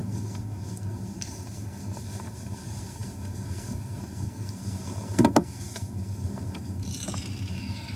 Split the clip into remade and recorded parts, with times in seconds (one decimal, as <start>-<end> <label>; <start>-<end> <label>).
0.0-6.9 remade; 6.9-7.5 recorded; 7.5-8.0 remade